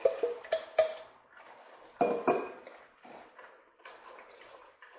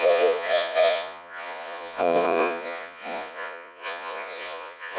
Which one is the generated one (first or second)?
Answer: second